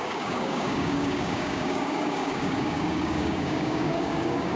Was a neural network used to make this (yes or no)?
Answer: yes